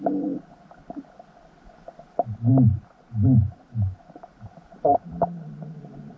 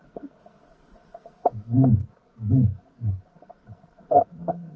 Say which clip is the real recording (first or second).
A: first